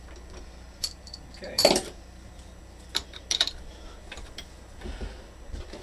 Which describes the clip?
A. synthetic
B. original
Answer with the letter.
A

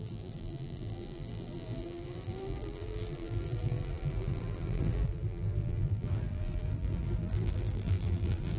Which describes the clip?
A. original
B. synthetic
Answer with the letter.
B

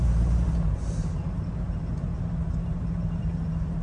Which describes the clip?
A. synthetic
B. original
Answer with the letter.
A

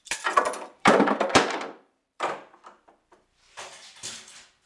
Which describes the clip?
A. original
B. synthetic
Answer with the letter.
B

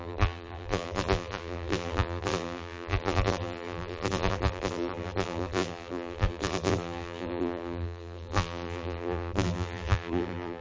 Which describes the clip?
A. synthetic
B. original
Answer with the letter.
A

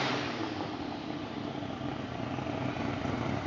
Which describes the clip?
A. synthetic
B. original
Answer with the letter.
A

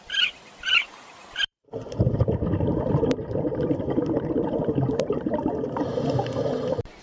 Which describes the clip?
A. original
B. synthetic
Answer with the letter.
B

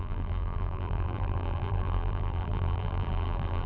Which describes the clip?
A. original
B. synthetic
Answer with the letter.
B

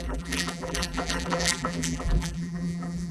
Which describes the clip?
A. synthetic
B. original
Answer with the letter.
A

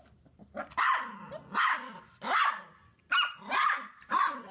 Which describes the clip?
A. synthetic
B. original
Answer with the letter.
B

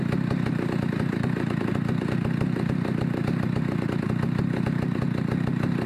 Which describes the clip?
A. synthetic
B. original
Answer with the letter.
A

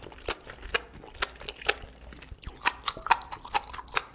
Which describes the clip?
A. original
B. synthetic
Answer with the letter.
A